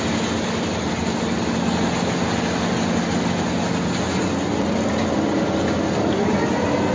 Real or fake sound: real